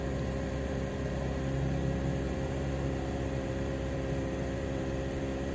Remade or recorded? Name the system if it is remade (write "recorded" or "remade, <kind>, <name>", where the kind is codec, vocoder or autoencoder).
remade, vocoder, BigVGAN v2